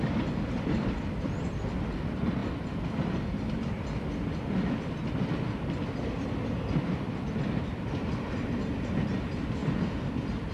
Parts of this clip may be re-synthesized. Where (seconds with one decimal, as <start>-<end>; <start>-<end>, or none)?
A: 0.0-10.5